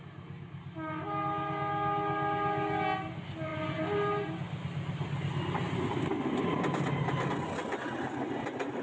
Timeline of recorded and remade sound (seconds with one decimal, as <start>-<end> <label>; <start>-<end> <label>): 0.0-8.8 recorded